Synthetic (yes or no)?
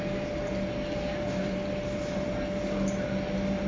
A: no